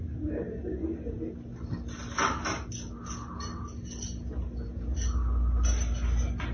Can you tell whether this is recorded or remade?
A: recorded